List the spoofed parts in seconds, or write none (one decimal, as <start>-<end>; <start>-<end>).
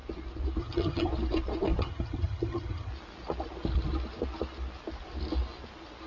0.6-1.1; 1.8-2.9